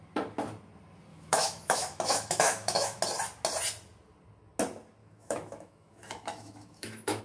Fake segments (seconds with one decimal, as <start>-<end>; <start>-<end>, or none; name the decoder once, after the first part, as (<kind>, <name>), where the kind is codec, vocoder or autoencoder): 1.1-3.0 (autoencoder, DAC-VAE); 5.0-7.2